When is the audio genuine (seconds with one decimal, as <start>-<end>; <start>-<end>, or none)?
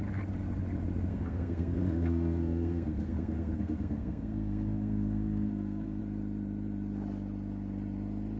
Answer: 0.0-1.1; 6.0-8.4